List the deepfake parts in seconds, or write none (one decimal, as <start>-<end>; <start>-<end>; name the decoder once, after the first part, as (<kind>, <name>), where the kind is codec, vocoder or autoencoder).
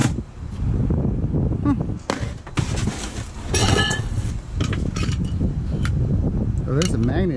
3.6-4.3 (vocoder, WaveNeXt)